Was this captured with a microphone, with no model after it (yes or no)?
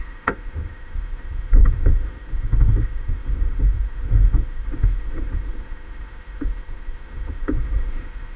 no